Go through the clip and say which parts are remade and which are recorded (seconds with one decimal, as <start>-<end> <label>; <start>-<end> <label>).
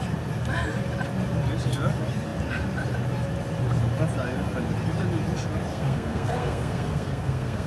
0.0-5.7 recorded; 5.7-7.7 remade